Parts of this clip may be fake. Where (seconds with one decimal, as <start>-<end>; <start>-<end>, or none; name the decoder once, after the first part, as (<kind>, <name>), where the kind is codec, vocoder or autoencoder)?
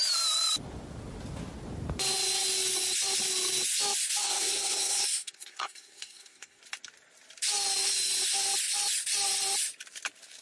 4.2-6.6 (codec, SNAC)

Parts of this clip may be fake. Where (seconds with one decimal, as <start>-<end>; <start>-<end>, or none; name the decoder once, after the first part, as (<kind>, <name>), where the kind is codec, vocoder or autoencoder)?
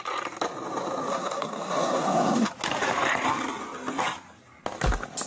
1.1-2.5 (codec, SNAC)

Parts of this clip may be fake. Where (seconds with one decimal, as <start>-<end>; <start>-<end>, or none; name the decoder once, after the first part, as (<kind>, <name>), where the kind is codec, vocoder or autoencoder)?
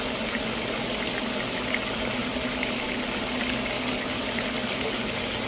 none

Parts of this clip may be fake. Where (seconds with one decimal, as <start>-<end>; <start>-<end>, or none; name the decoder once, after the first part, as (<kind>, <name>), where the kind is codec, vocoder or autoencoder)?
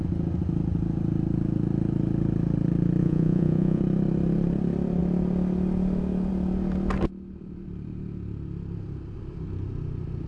3.0-3.8 (vocoder, Vocos)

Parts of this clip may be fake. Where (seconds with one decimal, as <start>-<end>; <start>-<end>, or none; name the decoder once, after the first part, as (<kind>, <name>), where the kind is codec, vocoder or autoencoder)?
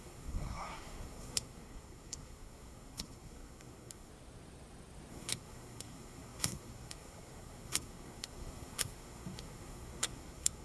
0.0-4.1 (codec, SNAC); 5.1-10.6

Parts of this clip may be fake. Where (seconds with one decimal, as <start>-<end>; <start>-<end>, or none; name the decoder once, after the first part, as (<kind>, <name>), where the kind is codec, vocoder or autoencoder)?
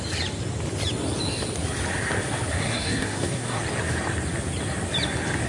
2.5-3.6 (codec, SNAC)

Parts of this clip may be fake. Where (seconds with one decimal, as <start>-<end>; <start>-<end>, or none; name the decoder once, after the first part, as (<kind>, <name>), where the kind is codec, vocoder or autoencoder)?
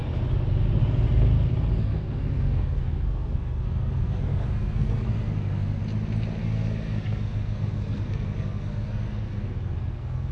1.8-5.8 (codec, SNAC); 6.4-10.3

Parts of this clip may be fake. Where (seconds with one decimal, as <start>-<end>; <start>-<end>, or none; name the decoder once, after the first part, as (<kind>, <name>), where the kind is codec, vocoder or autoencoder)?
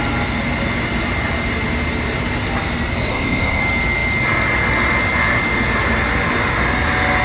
3.1-3.6 (codec, ZipCodec)